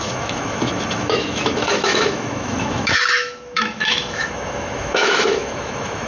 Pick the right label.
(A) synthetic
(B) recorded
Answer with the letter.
A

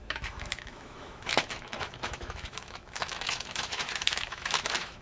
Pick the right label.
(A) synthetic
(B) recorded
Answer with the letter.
A